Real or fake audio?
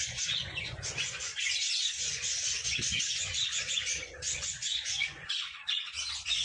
fake